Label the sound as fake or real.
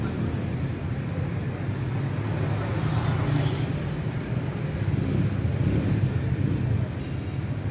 real